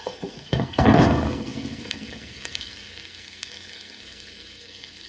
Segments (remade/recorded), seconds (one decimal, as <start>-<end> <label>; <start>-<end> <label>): 0.0-5.1 remade